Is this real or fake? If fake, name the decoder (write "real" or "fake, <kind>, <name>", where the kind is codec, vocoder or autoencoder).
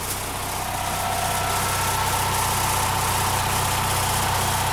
real